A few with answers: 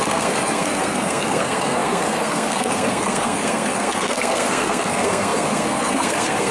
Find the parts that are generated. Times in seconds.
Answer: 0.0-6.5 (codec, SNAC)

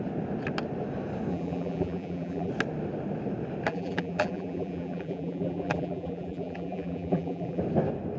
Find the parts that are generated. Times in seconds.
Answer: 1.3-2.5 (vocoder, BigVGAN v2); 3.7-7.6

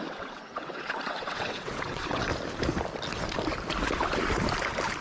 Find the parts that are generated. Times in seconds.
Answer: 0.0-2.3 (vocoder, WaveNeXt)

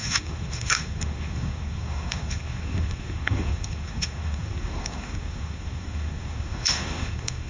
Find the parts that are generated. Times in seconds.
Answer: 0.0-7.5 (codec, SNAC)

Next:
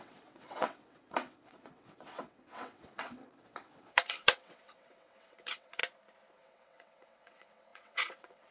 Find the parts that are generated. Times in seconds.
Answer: 0.0-5.8 (vocoder, WaveNeXt); 6.3-8.5

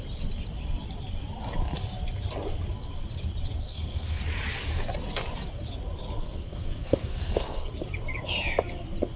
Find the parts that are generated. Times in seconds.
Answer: 3.6-4.2 (codec, SNAC); 6.2-7.7

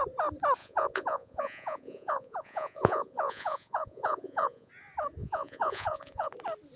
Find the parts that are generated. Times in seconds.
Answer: 0.6-4.7 (vocoder, Vocos); 5.2-6.3

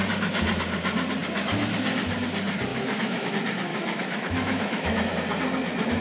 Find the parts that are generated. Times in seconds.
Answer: 2.7-3.3 (autoencoder, DAC-VAE); 3.7-5.1